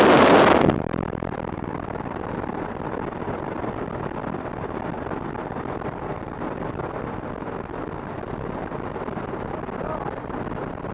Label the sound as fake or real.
fake